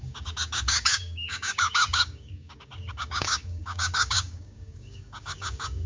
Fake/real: fake